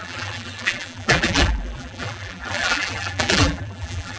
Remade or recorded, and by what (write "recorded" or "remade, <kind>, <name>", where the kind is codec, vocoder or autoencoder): remade, vocoder, BigVGAN v2